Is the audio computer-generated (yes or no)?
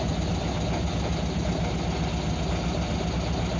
no